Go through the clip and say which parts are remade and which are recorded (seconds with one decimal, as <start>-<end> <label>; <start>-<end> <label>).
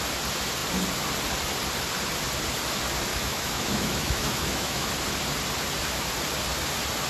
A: 0.0-3.1 recorded; 3.1-4.9 remade; 4.9-7.1 recorded